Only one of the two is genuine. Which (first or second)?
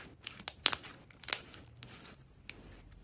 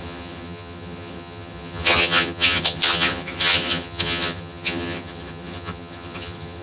first